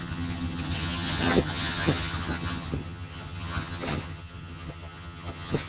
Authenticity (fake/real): fake